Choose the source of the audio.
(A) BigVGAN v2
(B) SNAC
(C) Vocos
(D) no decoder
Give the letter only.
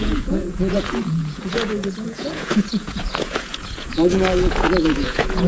C